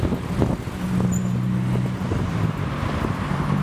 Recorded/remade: recorded